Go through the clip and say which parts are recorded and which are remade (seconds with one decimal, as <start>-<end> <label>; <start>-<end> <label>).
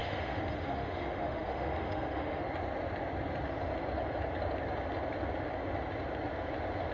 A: 0.0-2.4 remade; 2.4-6.9 recorded